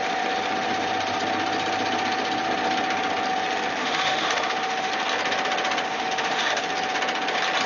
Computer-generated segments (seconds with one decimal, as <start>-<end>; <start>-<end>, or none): 3.8-4.9; 5.9-6.6